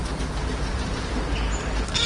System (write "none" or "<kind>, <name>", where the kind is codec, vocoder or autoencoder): none